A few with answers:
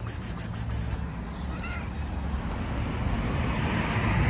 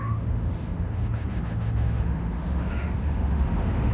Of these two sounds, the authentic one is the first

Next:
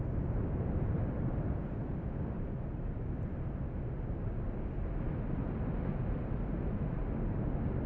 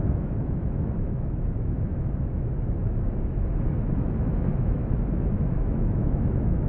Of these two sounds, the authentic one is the first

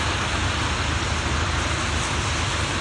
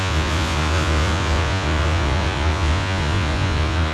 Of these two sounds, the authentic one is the first